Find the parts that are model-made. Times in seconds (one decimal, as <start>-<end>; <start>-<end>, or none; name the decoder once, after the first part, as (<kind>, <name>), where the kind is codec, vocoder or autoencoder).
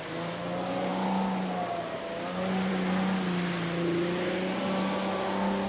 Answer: none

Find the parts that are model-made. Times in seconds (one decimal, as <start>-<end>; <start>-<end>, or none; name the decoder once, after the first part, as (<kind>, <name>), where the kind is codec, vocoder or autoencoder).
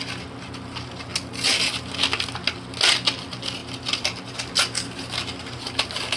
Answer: 3.6-4.3 (vocoder, BigVGAN v2)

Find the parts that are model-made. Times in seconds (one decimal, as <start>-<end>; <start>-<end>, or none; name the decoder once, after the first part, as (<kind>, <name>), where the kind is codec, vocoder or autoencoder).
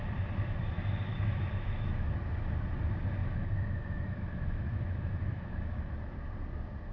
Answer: 1.1-2.1 (autoencoder, DAC-VAE); 3.2-5.9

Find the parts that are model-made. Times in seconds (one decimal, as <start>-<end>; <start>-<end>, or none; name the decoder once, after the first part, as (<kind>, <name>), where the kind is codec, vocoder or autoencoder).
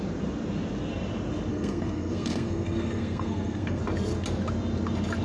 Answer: 1.5-3.8 (codec, SNAC)